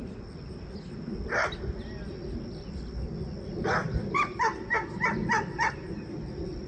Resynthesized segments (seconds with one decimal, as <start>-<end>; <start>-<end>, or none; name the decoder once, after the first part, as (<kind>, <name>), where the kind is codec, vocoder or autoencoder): none